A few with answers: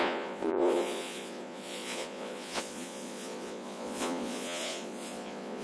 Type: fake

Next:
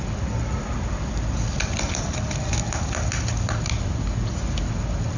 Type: real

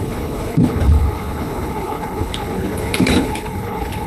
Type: fake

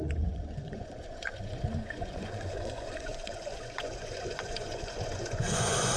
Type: fake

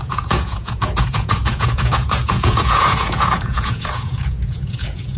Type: fake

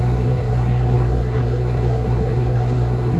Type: fake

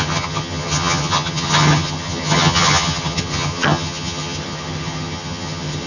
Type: fake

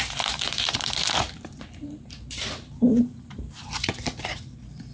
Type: fake